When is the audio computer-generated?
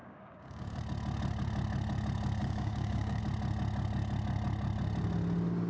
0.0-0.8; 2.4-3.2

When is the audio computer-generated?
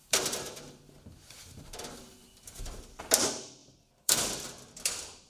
0.0-0.7; 3.6-4.5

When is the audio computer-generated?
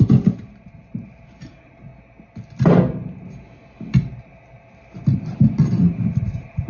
0.0-1.9; 5.9-6.7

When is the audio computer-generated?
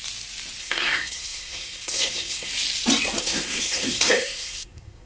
0.6-2.5; 3.2-5.1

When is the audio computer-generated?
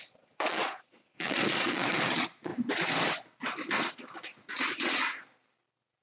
0.0-2.5; 4.5-5.0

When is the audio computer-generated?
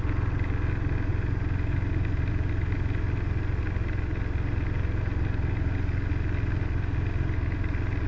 none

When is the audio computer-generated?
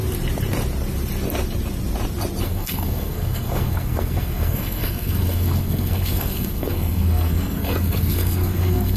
2.4-9.0